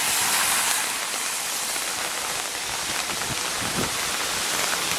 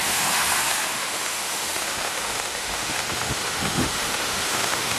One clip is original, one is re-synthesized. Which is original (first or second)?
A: first